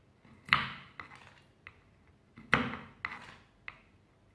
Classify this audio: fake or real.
real